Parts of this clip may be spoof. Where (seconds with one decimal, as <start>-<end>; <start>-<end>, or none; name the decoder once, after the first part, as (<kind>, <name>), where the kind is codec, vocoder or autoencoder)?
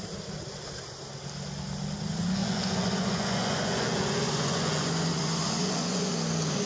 2.4-6.1 (vocoder, Vocos)